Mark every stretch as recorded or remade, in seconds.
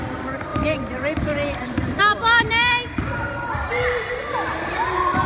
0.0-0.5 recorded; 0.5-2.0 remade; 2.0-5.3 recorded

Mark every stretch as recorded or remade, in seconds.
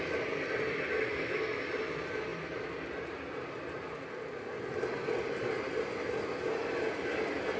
0.0-1.1 recorded; 1.1-1.6 remade; 1.6-7.6 recorded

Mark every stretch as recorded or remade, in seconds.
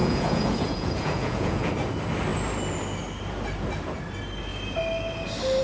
0.0-1.7 remade; 1.7-5.6 recorded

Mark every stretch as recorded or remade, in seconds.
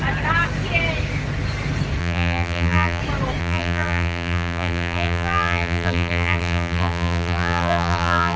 0.0-2.0 recorded; 2.0-3.0 remade; 3.0-3.4 recorded; 3.4-8.4 remade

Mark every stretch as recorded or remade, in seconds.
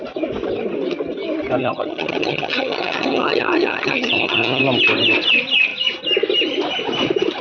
0.0-1.6 recorded; 1.6-4.6 remade; 4.6-7.4 recorded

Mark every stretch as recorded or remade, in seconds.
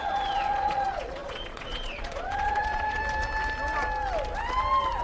0.0-3.0 remade; 3.0-5.0 recorded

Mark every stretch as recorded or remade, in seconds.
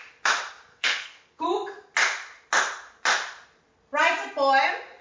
0.0-0.7 recorded; 0.7-1.4 remade; 1.4-5.0 recorded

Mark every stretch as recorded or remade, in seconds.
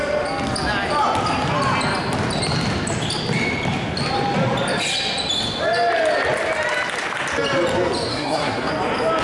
0.0-8.1 recorded; 8.1-8.7 remade; 8.7-9.2 recorded